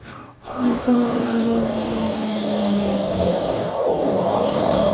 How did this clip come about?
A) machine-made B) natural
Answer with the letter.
A